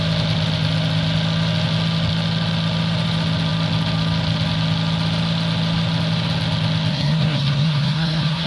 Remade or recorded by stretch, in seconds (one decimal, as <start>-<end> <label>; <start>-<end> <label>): 0.0-6.9 recorded; 6.9-8.5 remade